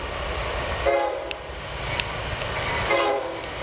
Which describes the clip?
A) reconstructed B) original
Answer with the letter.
B